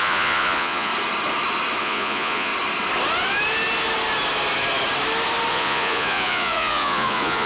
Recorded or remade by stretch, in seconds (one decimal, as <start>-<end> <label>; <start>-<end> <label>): 0.0-0.9 remade; 0.9-1.8 recorded; 1.8-2.5 remade; 2.5-5.5 recorded; 5.5-7.5 remade